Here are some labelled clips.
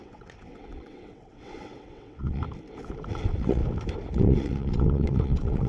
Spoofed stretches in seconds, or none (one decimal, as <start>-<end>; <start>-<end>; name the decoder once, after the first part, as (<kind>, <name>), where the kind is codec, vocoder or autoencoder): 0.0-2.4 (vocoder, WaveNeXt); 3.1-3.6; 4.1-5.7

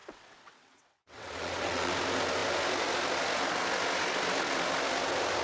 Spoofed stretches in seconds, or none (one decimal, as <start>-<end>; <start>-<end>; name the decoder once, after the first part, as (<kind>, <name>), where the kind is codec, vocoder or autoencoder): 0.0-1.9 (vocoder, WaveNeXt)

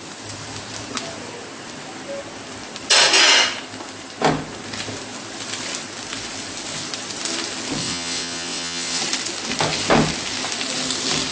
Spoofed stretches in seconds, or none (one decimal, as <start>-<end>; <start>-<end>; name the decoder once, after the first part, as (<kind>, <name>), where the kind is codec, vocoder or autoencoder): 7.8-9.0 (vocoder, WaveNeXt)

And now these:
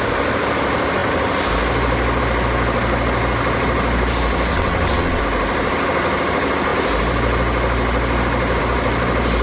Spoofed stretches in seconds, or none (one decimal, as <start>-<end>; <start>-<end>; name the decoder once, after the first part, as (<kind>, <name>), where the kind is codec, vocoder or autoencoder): 4.5-5.2 (vocoder, WaveNeXt)